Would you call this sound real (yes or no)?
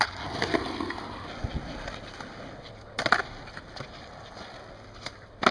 yes